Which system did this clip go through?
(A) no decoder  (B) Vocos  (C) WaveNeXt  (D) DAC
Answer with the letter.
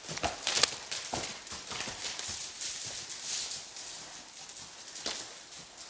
A